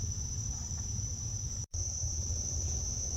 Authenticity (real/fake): fake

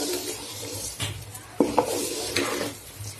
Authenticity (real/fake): fake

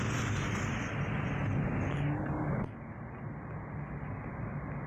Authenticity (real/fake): real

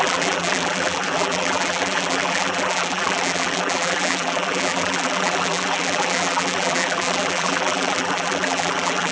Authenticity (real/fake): fake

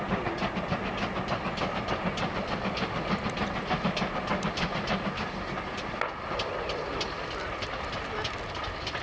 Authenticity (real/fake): real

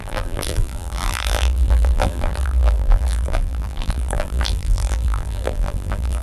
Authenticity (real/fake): fake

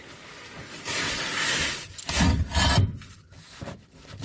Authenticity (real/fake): real